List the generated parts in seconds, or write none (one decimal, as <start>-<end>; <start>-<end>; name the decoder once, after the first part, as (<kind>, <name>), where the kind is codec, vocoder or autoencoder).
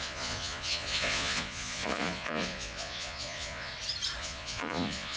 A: 0.0-3.7 (vocoder, Vocos); 4.2-5.2